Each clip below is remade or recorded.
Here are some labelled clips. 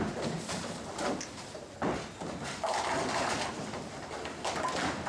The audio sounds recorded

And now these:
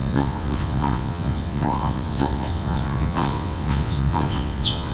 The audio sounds remade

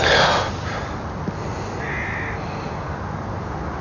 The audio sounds recorded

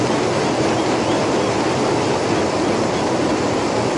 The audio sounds remade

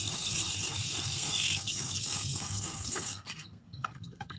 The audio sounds remade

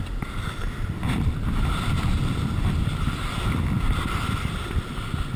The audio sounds recorded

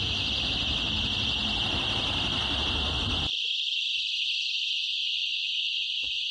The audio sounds recorded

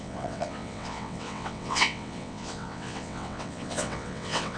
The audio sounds remade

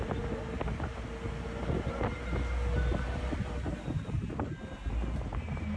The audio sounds recorded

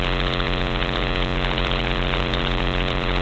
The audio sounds remade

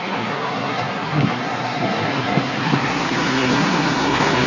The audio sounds remade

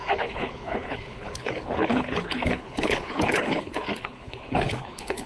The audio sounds remade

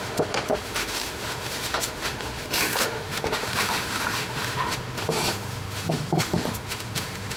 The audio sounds remade